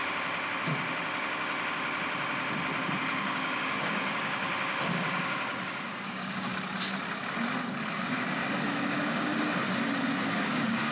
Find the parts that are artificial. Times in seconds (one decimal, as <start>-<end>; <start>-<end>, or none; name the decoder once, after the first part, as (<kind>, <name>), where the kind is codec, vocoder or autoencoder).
2.8-4.5 (codec, DAC); 5.0-6.5; 7.9-9.3; 10.2-10.9